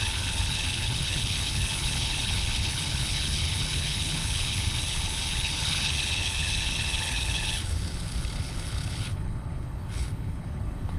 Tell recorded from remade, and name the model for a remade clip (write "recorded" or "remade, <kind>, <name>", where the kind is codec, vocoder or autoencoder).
remade, codec, HILCodec